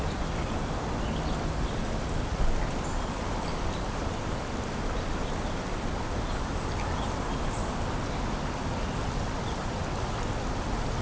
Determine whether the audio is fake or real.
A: real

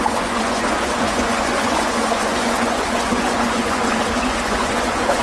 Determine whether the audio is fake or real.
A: fake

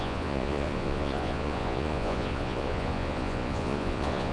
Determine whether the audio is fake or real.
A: fake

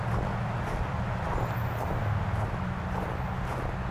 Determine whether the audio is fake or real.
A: real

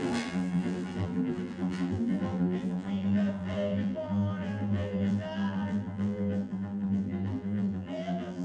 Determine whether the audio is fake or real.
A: fake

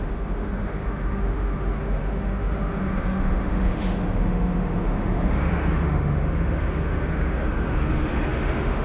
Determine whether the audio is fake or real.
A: fake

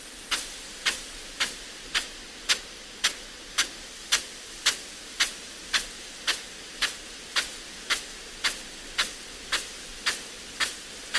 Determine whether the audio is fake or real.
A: real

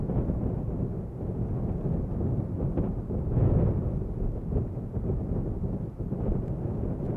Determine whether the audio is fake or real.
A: real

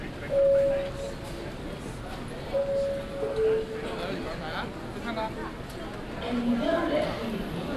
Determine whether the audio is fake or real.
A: real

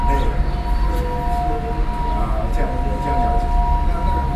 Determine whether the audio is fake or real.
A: real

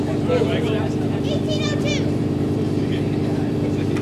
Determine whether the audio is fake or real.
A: fake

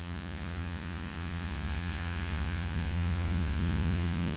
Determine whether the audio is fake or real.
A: fake